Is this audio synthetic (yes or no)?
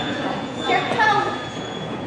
yes